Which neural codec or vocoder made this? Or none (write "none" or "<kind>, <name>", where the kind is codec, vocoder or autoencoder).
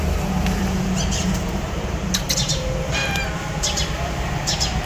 vocoder, BigVGAN v2